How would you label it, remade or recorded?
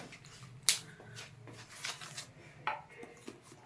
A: recorded